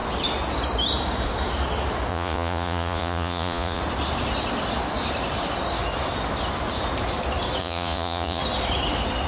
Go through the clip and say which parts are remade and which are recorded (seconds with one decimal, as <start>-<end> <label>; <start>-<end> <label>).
0.0-2.1 recorded; 2.1-3.8 remade; 3.8-7.6 recorded; 7.6-8.4 remade; 8.4-9.3 recorded